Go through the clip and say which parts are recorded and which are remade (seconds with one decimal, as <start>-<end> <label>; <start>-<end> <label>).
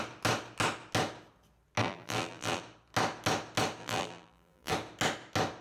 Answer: 0.0-1.8 recorded; 1.8-2.6 remade; 2.6-3.8 recorded; 3.8-4.7 remade; 4.7-5.6 recorded